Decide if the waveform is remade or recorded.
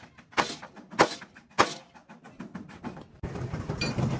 recorded